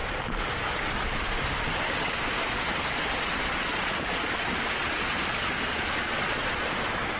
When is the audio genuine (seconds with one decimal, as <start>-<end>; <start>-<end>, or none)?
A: 0.0-7.2